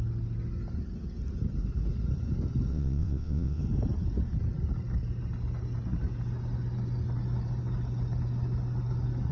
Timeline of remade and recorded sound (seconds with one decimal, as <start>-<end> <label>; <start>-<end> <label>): 0.0-2.7 recorded; 2.7-3.6 remade; 3.6-9.3 recorded